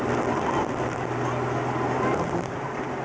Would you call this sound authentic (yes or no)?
yes